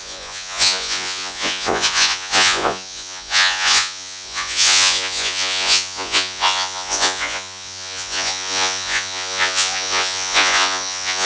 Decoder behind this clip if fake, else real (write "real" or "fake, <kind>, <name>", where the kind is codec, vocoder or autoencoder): fake, vocoder, Vocos